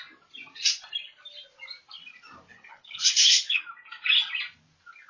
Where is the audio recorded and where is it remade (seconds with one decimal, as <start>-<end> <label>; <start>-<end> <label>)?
0.0-2.5 recorded; 2.5-3.6 remade; 3.6-5.1 recorded